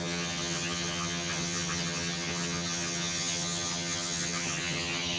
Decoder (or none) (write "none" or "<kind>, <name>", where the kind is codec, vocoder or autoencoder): vocoder, HiFi-GAN